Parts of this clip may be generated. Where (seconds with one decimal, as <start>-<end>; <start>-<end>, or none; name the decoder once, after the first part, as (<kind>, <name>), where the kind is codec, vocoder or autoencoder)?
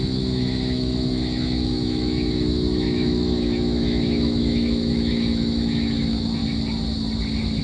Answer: 0.0-6.4 (autoencoder, DAC-VAE)